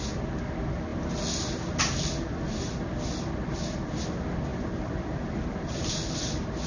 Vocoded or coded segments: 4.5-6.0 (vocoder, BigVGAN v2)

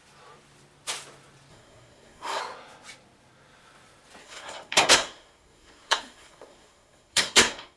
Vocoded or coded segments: 1.5-2.4 (codec, SNAC); 4.2-7.8

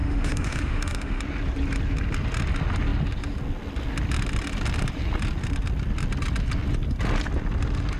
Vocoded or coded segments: 0.0-1.2 (autoencoder, DAC-VAE)